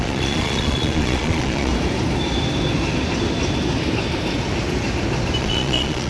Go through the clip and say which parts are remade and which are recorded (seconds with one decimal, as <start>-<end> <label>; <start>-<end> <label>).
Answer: 0.0-1.7 remade; 1.7-5.4 recorded; 5.4-6.1 remade